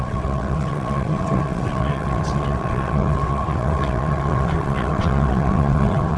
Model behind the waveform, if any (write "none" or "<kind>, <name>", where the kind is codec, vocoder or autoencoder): vocoder, WaveNeXt